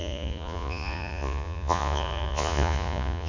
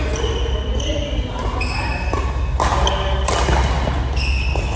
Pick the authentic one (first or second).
second